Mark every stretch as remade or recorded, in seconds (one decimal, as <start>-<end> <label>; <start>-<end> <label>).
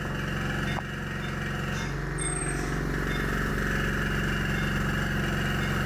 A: 0.0-5.9 recorded